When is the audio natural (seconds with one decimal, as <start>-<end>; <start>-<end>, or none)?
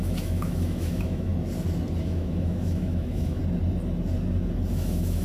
1.3-2.0; 3.4-4.7